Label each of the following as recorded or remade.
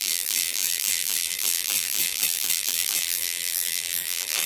remade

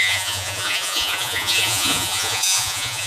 remade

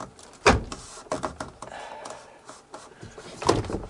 recorded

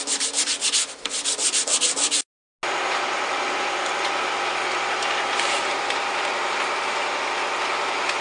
recorded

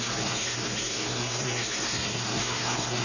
remade